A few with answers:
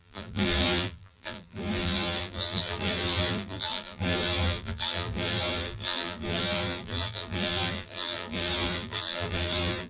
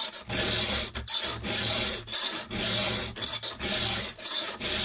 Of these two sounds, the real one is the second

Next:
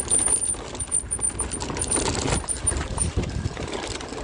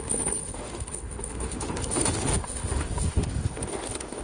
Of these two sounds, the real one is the first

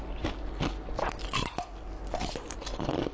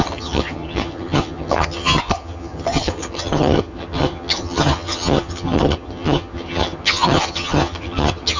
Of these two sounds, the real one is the first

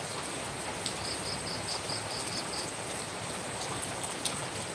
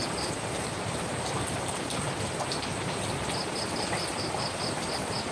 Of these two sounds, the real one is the first